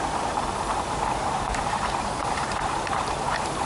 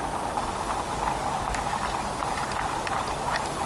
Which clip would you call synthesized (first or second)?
first